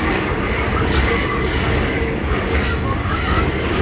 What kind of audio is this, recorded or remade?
remade